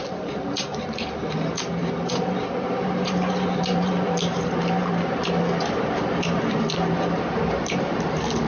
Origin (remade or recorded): remade